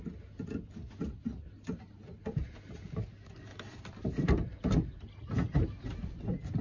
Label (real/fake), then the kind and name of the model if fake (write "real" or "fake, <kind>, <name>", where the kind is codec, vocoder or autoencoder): real